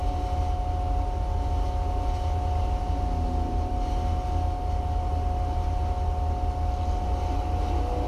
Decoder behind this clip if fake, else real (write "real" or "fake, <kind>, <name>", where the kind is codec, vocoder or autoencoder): real